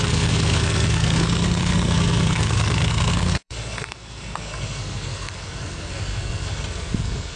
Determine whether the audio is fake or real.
fake